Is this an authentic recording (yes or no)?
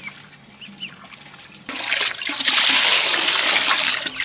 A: yes